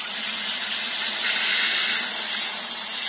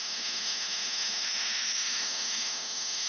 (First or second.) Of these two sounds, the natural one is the first